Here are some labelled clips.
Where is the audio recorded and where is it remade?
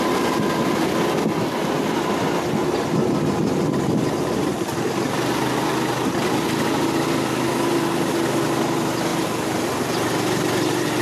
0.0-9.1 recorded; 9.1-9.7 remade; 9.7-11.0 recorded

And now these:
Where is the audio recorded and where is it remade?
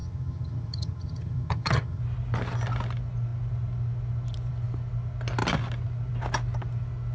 0.0-2.0 remade; 2.0-7.1 recorded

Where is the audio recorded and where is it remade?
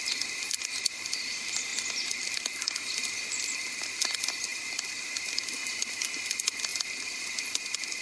0.0-1.7 recorded; 1.7-2.3 remade; 2.3-4.5 recorded; 4.5-5.3 remade; 5.3-6.7 recorded; 6.7-7.4 remade; 7.4-8.0 recorded